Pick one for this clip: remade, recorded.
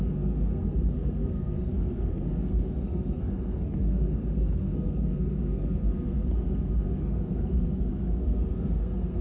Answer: remade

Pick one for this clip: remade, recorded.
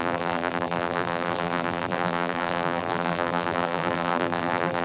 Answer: remade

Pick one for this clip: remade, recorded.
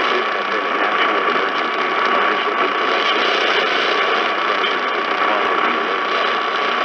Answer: recorded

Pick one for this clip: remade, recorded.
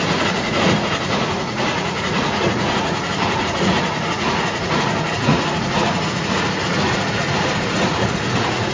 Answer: remade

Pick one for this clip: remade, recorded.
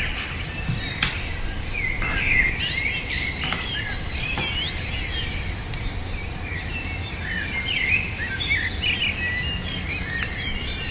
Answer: recorded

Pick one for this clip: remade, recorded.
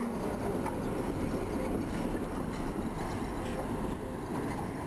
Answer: recorded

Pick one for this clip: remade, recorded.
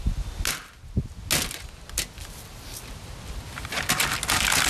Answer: recorded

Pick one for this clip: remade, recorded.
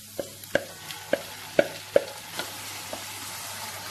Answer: recorded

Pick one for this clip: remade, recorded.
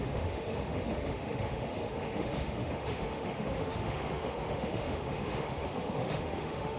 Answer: remade